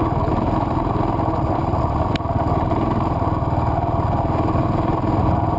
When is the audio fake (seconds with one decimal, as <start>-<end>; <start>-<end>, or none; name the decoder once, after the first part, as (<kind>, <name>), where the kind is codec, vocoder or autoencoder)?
none